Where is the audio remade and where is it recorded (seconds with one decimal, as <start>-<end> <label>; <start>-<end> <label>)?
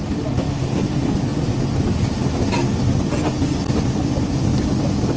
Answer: 0.0-5.2 recorded